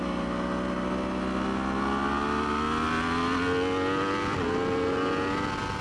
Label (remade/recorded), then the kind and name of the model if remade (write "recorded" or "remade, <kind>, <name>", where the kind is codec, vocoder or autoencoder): recorded